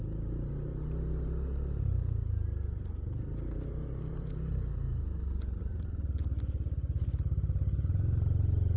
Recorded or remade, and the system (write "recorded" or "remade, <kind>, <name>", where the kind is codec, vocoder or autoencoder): recorded